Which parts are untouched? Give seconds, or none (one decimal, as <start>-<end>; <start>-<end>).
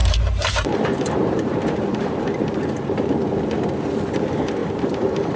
3.0-4.6